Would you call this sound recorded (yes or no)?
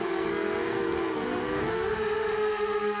no